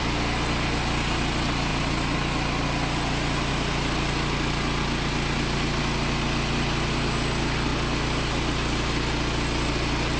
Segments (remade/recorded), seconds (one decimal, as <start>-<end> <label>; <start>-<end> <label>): 0.0-10.2 recorded